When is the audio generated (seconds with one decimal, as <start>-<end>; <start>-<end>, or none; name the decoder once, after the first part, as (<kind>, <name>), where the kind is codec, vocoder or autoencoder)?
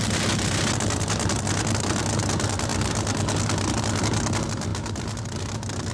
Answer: 2.7-4.0 (vocoder, BigVGAN v2); 4.7-5.9